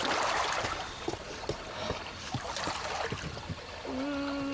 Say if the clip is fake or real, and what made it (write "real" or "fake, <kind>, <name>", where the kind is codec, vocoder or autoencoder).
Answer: real